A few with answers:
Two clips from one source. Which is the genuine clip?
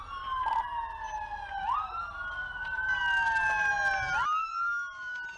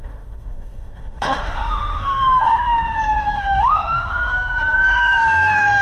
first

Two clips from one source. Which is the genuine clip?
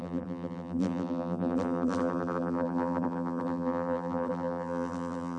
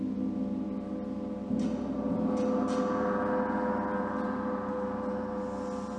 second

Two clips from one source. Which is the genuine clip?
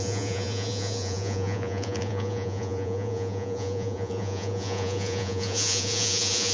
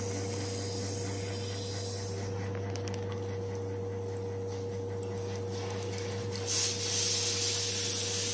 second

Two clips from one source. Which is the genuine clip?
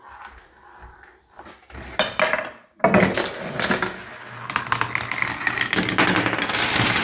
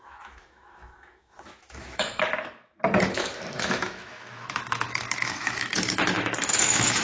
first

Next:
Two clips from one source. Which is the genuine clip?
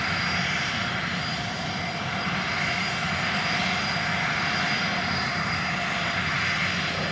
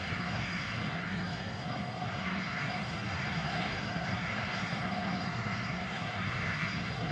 first